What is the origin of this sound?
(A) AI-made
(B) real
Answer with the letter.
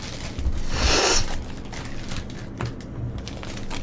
B